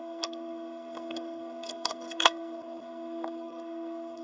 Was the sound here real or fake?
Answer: fake